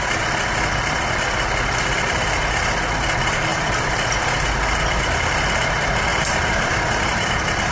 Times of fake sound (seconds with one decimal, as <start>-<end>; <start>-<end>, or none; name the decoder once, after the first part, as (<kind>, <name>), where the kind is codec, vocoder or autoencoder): 3.5-4.8 (vocoder, BigVGAN v2); 6.1-7.3